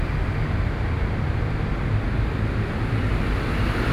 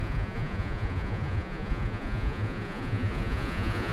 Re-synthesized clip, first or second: second